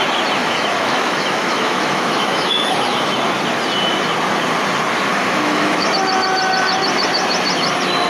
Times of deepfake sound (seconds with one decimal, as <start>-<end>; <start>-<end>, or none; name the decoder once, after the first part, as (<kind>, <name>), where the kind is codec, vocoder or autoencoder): 0.4-3.1 (autoencoder, DAC-VAE); 5.1-5.9